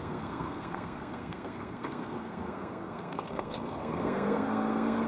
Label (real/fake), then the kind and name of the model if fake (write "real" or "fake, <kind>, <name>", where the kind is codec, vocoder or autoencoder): fake, codec, SNAC